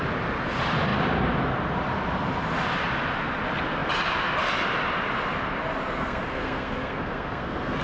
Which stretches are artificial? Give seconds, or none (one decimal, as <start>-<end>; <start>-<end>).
6.0-7.8